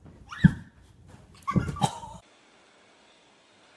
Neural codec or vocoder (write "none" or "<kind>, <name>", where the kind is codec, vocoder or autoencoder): none